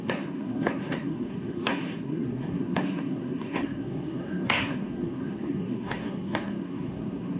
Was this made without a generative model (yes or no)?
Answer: no